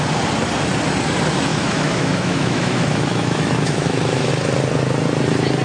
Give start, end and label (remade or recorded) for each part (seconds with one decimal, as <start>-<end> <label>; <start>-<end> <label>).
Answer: 0.0-1.5 recorded; 1.5-4.3 remade; 4.3-5.6 recorded